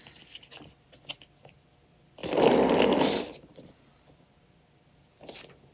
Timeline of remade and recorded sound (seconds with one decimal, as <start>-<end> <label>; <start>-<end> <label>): 0.0-5.7 recorded